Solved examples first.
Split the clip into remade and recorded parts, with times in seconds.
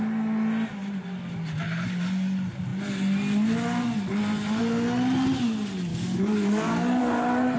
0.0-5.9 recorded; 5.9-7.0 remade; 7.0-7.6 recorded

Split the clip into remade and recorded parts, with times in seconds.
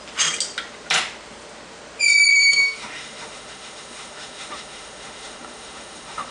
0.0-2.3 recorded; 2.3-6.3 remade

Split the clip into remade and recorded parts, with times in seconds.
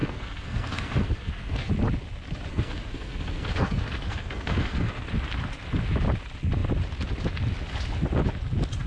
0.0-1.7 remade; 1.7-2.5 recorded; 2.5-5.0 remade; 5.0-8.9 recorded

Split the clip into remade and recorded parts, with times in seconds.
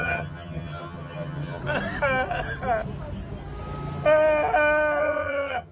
0.0-1.6 remade; 1.6-5.0 recorded; 5.0-5.7 remade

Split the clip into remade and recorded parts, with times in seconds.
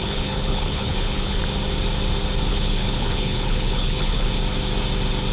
0.0-1.4 remade; 1.4-2.5 recorded; 2.5-4.3 remade; 4.3-5.3 recorded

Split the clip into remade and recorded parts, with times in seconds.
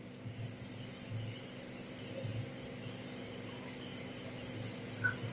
0.0-5.3 recorded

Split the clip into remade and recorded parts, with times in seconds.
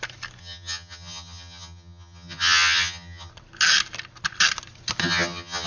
0.0-0.4 recorded; 0.4-3.3 remade; 3.3-5.0 recorded; 5.0-5.7 remade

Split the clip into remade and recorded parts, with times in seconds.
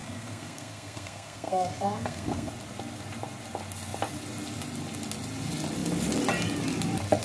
0.0-2.5 remade; 2.5-7.2 recorded